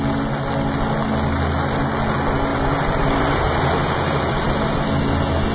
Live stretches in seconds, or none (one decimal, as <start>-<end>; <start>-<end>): 0.0-2.5; 4.8-5.5